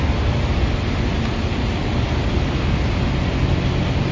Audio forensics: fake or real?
real